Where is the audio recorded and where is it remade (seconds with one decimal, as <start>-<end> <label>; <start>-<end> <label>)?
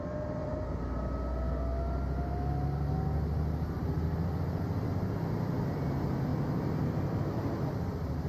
0.0-0.4 remade; 0.4-3.8 recorded; 3.8-6.3 remade; 6.3-6.9 recorded; 6.9-8.3 remade